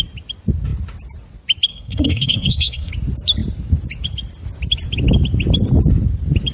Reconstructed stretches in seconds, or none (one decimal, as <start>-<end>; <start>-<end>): 1.7-2.9

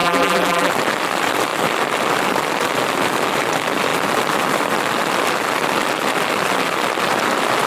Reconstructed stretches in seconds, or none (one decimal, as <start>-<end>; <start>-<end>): 0.0-0.7

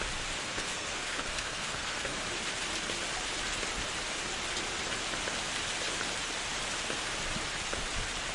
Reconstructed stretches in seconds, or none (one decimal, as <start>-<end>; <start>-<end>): 0.4-2.2

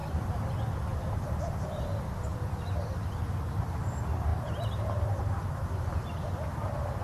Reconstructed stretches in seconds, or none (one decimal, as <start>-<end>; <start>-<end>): 0.0-0.5

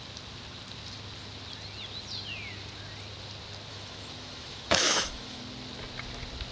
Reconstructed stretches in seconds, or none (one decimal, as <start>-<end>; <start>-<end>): 3.7-5.4

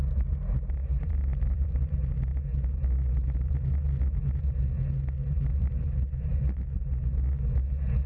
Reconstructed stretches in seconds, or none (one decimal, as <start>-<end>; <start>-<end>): 0.8-1.8; 5.2-6.0